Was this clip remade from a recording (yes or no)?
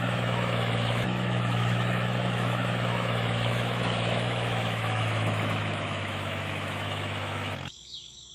yes